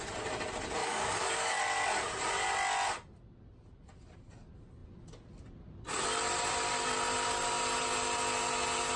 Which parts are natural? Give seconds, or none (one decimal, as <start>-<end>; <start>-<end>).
0.0-0.8; 1.6-9.0